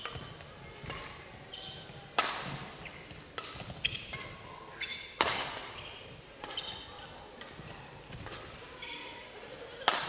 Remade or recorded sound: recorded